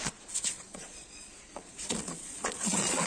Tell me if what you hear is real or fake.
fake